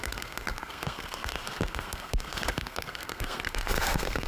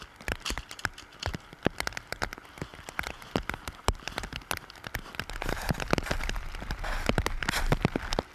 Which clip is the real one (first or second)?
second